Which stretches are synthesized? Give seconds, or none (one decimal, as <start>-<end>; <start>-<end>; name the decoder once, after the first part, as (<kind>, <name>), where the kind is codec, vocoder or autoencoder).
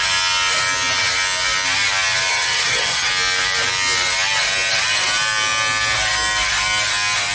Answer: 2.3-3.1 (vocoder, HiFi-GAN)